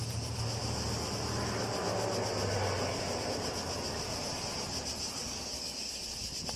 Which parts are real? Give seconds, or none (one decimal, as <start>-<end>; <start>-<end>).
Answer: 0.0-5.2; 5.9-6.6